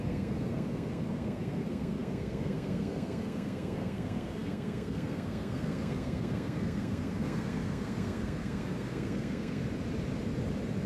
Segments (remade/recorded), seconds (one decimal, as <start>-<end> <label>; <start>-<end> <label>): 0.0-9.6 remade; 9.6-10.9 recorded